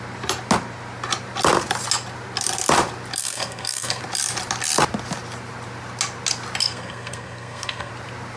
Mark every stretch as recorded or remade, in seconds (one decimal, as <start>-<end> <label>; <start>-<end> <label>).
0.0-3.2 recorded; 3.2-4.0 remade; 4.0-6.6 recorded; 6.6-7.9 remade; 7.9-8.4 recorded